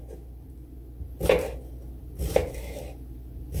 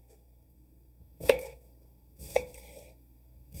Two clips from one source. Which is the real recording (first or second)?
first